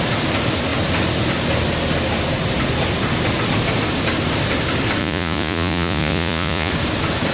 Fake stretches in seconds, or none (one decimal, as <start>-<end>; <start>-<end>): 5.0-6.7